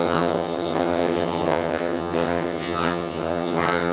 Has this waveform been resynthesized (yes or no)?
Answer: yes